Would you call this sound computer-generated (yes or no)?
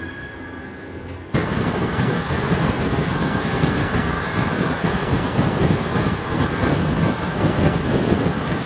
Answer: yes